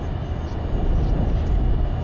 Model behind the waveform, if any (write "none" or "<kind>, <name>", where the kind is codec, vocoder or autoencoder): none